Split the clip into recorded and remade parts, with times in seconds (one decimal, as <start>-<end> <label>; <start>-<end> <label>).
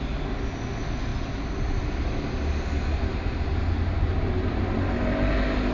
0.0-5.7 recorded